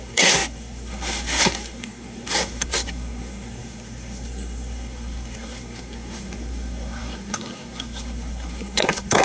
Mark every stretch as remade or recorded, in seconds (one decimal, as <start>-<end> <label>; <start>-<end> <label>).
0.0-9.2 remade